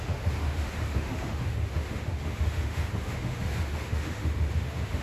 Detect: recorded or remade remade